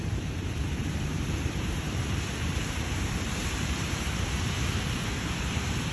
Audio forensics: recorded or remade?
remade